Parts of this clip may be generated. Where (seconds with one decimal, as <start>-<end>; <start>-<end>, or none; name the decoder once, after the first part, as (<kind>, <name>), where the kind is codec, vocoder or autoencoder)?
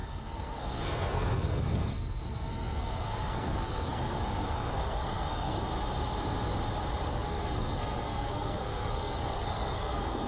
0.0-5.7 (codec, SNAC); 7.1-10.3